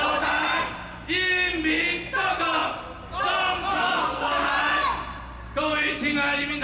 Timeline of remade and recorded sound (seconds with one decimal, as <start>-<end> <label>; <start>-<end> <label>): 0.0-3.7 recorded; 3.7-4.5 remade; 4.5-6.6 recorded